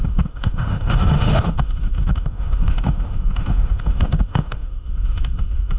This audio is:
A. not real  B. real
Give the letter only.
A